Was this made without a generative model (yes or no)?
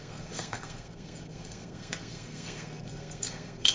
no